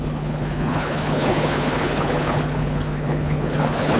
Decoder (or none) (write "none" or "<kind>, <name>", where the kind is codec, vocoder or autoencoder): codec, HILCodec